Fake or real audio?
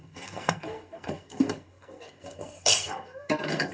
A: fake